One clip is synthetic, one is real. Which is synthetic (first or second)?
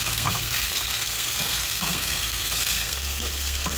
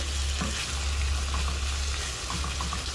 first